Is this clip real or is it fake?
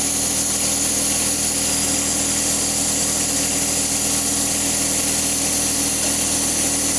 real